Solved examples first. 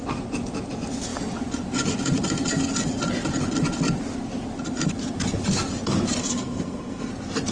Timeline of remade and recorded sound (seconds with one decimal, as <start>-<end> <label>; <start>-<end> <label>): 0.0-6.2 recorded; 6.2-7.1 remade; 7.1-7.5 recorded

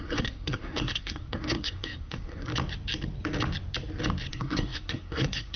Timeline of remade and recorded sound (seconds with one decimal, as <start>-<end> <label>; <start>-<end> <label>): 0.0-2.5 remade; 2.5-4.3 recorded; 4.3-5.6 remade

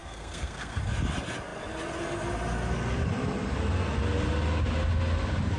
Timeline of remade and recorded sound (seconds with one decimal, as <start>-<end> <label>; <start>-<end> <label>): 0.0-0.8 remade; 0.8-5.6 recorded

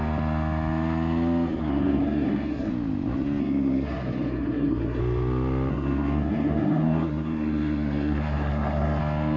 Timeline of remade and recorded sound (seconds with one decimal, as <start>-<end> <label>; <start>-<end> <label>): 0.0-1.6 recorded; 1.6-2.7 remade; 2.7-3.4 recorded; 3.4-5.0 remade; 5.0-5.7 recorded; 5.7-9.0 remade; 9.0-9.4 recorded

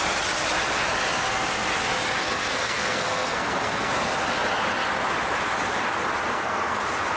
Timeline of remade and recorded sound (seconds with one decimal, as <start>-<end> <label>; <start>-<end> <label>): 0.0-2.2 recorded; 2.2-3.9 remade; 3.9-6.3 recorded; 6.3-6.8 remade; 6.8-7.2 recorded

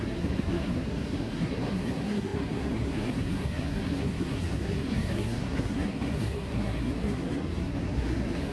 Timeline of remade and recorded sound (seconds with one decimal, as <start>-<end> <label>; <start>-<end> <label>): 0.0-8.5 remade

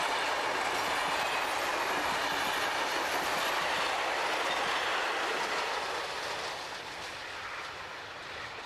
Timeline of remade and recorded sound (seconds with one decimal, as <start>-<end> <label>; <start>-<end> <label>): 0.0-8.7 recorded